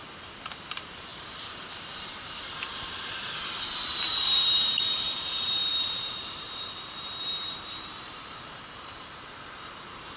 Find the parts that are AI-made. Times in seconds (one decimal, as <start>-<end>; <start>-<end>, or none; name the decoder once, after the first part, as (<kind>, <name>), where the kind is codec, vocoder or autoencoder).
0.0-10.2 (vocoder, BigVGAN v2)